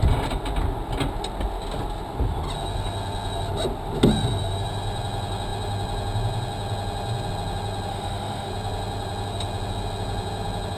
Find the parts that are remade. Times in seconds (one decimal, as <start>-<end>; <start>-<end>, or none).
7.9-8.5